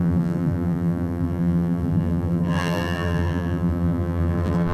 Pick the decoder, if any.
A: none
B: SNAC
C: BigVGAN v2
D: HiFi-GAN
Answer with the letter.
C